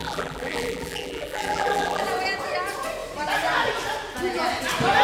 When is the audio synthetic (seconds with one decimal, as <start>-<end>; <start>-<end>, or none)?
0.0-2.0